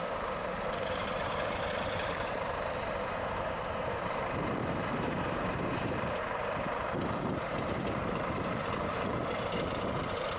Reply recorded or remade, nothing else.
remade